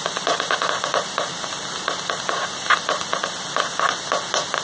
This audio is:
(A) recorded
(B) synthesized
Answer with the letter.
A